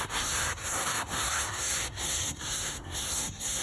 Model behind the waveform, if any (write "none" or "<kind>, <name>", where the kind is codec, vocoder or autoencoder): codec, SNAC